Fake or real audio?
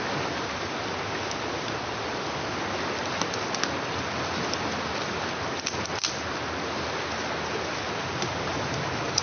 real